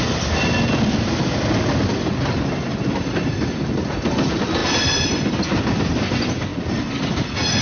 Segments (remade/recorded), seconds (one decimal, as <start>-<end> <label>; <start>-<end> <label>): 0.0-7.6 recorded